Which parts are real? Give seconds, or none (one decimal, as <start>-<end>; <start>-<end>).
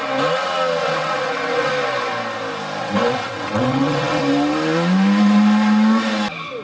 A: 0.0-0.8; 1.7-2.8; 4.2-6.6